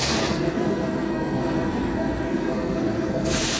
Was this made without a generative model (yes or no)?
no